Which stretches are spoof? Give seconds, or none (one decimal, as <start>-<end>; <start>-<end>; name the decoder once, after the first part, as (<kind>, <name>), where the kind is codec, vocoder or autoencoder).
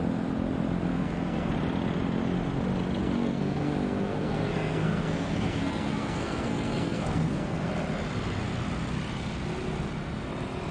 0.9-1.5 (codec, SNAC); 3.0-7.7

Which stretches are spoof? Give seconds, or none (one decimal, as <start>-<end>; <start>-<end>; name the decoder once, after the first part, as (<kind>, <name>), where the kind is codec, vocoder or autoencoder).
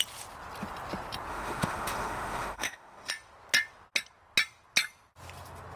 1.3-3.1 (autoencoder, DAC-VAE)